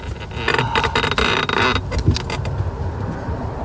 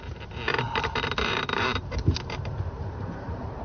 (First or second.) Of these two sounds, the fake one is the second